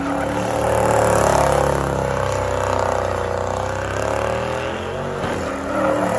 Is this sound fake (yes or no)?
no